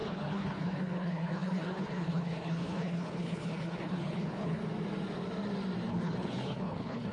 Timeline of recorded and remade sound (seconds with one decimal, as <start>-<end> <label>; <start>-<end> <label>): 0.0-4.6 remade; 4.6-5.9 recorded; 5.9-7.1 remade